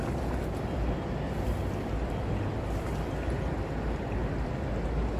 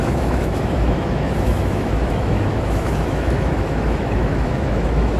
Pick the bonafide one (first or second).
first